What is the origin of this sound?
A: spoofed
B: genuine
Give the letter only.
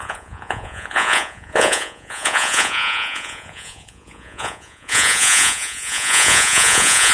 A